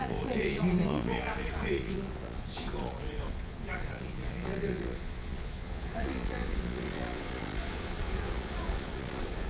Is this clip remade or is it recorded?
remade